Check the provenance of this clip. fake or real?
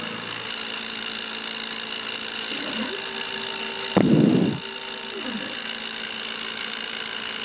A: real